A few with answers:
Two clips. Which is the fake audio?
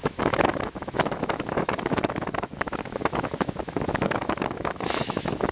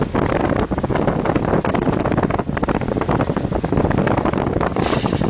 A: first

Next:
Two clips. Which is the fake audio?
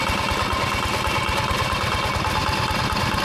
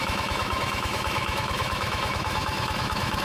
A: second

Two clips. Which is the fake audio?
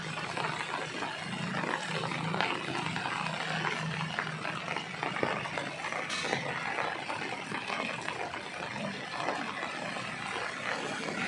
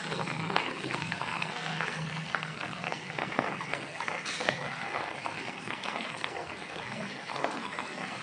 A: second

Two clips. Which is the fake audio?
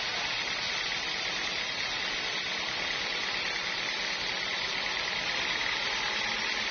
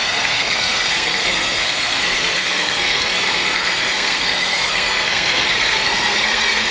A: second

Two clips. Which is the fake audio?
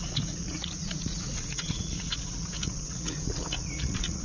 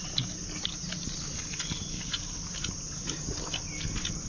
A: first